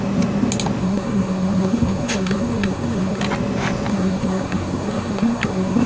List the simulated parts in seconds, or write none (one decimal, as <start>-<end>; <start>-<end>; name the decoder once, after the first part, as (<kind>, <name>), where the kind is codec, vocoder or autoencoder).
0.8-3.2 (codec, SNAC); 3.9-5.9